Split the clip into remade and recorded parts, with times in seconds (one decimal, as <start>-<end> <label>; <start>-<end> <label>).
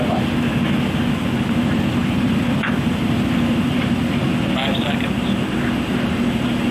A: 0.0-2.0 recorded; 2.0-3.9 remade; 3.9-6.7 recorded